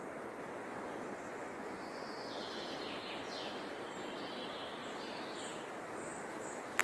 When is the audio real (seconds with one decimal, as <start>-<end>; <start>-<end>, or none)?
0.0-0.6; 2.6-3.0; 3.7-6.8